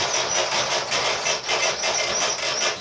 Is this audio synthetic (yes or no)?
no